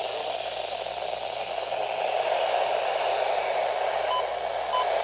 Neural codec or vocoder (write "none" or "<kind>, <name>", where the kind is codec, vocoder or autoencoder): none